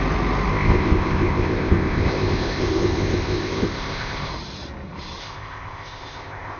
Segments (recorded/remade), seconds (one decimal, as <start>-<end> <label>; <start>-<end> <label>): 0.0-0.5 recorded; 0.5-4.3 remade; 4.3-5.2 recorded; 5.2-6.6 remade